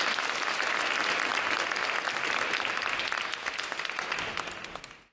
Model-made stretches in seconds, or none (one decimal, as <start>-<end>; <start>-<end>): none